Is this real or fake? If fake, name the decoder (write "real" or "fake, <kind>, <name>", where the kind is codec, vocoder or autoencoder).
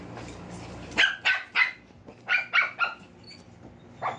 real